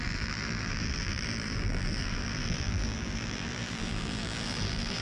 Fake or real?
fake